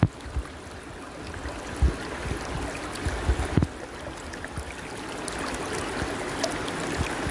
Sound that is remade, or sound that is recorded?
recorded